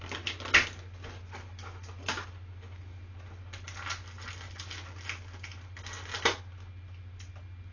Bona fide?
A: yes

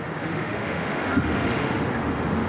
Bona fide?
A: no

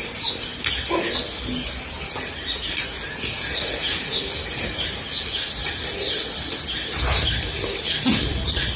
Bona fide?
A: yes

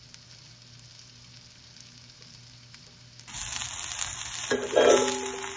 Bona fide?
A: yes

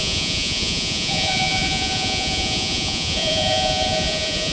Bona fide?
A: no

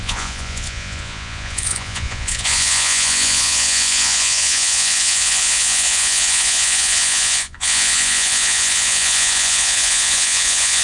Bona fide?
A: no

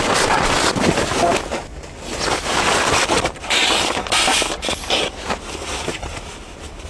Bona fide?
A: yes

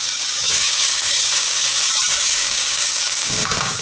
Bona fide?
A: no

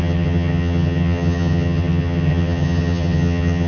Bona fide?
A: no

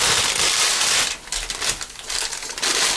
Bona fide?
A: yes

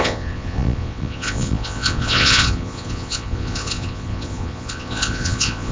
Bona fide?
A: no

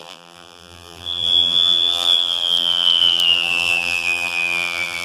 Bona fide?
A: no